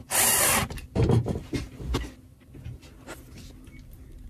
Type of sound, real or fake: real